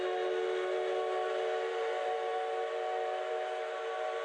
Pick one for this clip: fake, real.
real